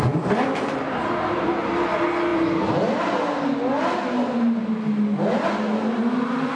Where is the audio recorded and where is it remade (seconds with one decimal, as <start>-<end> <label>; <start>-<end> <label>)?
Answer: 0.0-6.6 recorded